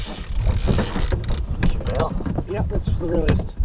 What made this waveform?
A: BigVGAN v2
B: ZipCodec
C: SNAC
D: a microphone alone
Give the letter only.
A